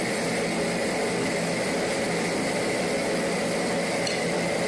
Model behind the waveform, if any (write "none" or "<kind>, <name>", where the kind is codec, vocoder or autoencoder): none